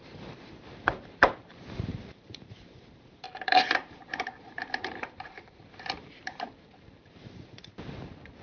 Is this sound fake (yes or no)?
yes